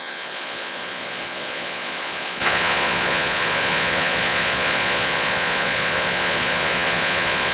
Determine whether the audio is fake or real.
fake